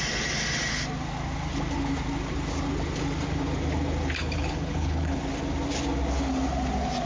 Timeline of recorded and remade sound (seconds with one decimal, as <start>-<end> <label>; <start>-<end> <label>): 0.0-4.2 recorded; 4.2-5.2 remade; 5.2-7.1 recorded